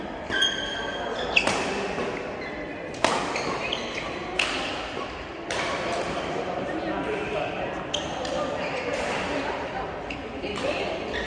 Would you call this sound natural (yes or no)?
no